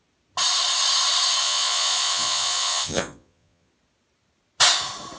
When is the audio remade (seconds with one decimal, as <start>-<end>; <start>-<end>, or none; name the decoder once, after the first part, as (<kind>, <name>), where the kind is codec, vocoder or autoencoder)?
1.4-3.7 (vocoder, Vocos)